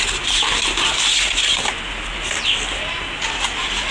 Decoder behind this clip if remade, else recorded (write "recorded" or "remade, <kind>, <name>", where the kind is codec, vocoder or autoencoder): recorded